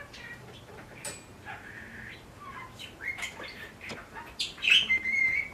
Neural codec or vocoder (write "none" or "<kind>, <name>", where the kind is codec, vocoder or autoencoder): vocoder, BigVGAN v2